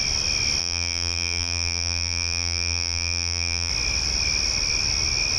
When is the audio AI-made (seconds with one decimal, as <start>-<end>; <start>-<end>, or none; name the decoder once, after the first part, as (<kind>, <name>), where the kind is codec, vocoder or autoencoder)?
0.6-3.7 (vocoder, BigVGAN v2)